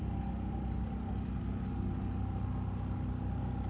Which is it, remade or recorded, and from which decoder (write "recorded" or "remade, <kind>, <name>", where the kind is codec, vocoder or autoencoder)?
recorded